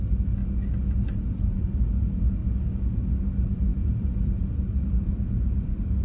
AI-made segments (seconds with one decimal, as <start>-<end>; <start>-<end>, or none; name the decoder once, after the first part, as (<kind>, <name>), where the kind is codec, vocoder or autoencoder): 0.0-0.4 (vocoder, BigVGAN v2); 1.2-2.4; 3.1-6.0

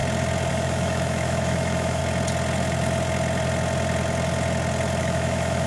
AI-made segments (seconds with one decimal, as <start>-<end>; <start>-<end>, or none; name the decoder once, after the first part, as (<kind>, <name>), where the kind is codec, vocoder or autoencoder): 0.5-2.0 (autoencoder, DAC-VAE); 5.0-5.7

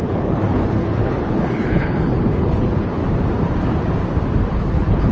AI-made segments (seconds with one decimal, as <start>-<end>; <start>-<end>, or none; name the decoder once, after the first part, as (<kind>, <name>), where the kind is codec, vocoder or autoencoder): 0.0-3.0 (codec, HILCodec); 4.5-5.1

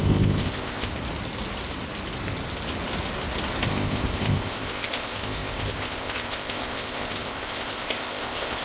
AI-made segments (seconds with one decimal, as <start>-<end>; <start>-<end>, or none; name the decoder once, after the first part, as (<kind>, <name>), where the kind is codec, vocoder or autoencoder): 0.0-0.9 (codec, ZipCodec); 3.7-8.6

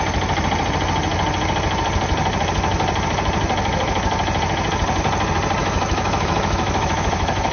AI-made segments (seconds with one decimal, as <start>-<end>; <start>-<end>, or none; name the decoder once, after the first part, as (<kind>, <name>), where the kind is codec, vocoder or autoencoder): 5.6-7.5 (autoencoder, DAC-VAE)

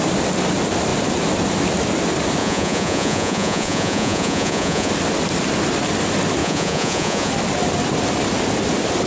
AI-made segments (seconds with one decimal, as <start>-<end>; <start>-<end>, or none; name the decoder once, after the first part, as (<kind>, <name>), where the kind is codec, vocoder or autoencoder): 2.4-4.9 (vocoder, Vocos); 6.4-7.3

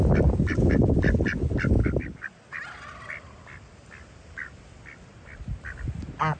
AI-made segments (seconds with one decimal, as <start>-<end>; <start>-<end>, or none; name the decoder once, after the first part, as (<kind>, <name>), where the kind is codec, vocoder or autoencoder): none